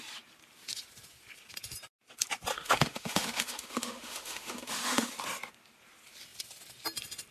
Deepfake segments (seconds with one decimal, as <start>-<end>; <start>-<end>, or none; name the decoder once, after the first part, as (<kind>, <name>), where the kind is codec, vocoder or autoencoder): 2.5-5.1 (autoencoder, DAC-VAE)